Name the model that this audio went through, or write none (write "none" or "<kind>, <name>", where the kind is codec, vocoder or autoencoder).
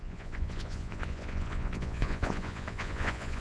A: vocoder, Vocos